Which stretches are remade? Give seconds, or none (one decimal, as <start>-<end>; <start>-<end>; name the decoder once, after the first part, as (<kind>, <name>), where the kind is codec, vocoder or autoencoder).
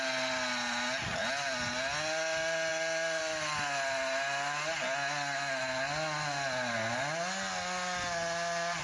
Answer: none